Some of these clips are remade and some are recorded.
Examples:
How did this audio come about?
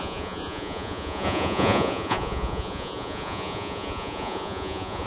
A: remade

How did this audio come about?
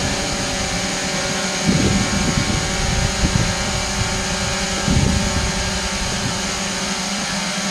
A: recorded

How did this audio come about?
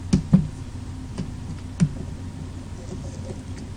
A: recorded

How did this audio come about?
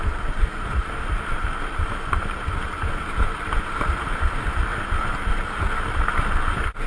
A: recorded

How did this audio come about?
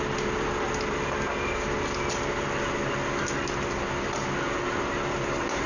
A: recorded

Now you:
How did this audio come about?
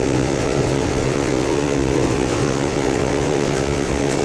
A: remade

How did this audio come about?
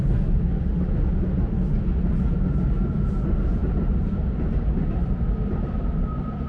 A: recorded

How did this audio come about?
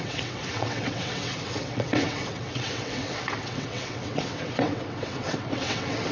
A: remade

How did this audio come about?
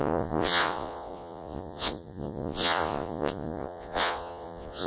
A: remade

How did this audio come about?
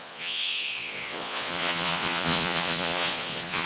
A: remade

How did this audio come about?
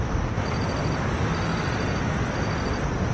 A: recorded